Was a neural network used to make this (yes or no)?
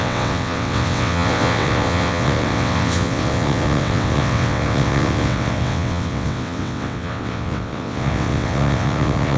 yes